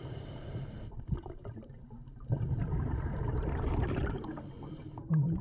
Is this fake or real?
fake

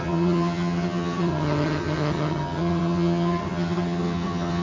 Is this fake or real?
fake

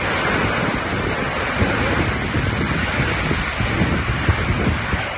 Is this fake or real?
real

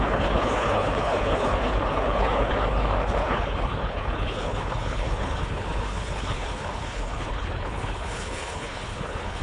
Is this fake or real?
fake